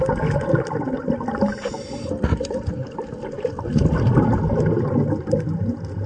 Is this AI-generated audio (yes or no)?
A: no